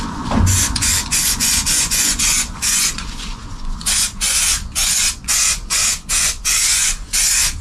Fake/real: fake